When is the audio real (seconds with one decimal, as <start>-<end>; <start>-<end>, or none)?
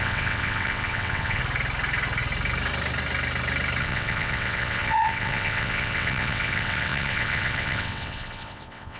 1.4-3.8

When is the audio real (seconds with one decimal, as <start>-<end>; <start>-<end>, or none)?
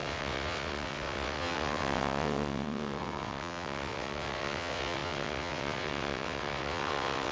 none